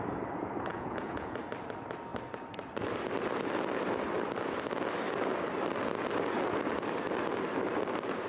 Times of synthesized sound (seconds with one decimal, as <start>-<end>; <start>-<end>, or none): 0.7-1.4